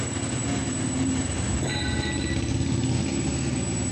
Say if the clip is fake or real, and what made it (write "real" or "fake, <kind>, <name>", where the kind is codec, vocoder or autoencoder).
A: real